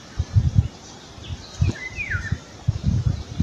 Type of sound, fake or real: real